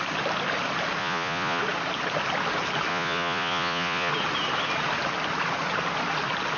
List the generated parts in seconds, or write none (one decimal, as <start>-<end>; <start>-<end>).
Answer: 1.0-1.6; 2.9-4.1